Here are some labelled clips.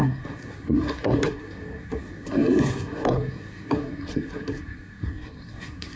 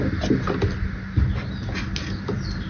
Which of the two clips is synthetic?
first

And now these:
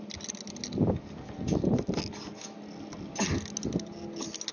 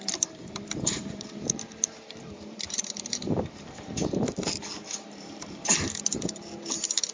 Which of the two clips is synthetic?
second